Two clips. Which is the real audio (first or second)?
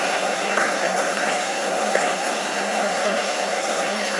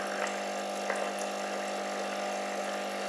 second